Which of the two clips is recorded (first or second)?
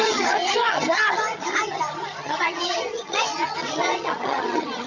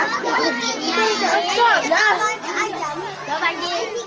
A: second